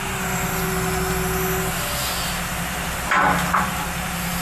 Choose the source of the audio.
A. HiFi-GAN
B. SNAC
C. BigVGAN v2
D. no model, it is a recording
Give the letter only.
D